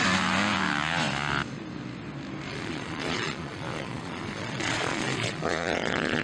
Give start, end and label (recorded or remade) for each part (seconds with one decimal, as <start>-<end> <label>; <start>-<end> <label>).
0.0-2.5 recorded; 2.5-6.2 remade